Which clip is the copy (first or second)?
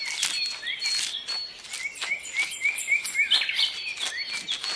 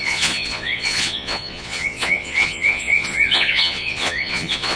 second